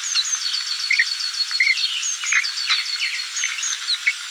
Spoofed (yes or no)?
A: no